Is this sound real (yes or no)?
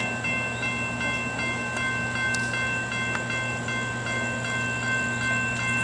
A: yes